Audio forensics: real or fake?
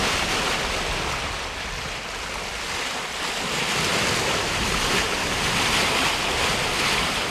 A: real